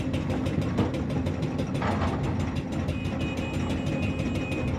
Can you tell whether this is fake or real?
real